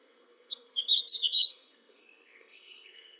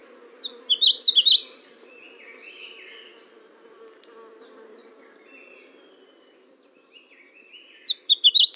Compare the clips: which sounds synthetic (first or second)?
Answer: first